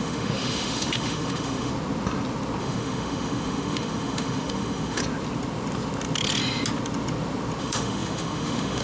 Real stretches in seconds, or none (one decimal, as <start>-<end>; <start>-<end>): 1.7-2.6; 5.0-7.6